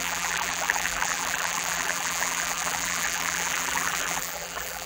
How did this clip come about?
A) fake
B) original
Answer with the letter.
A